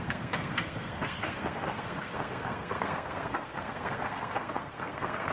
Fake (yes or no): yes